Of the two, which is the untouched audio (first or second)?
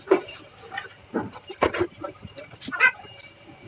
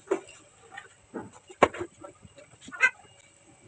second